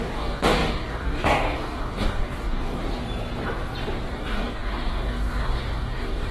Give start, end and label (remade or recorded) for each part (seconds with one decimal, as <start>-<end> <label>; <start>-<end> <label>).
0.0-2.8 remade; 2.8-4.1 recorded; 4.1-6.3 remade